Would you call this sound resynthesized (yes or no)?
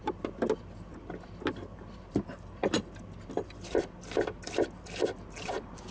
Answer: no